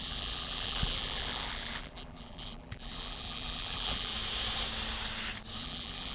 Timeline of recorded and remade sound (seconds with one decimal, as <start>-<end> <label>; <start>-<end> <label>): 0.0-4.1 remade; 4.1-5.6 recorded; 5.6-6.1 remade